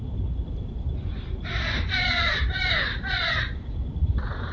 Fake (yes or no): no